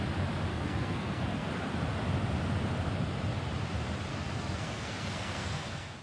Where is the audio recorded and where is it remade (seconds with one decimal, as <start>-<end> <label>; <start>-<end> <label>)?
0.0-0.5 recorded; 0.5-1.5 remade; 1.5-4.1 recorded; 4.1-6.0 remade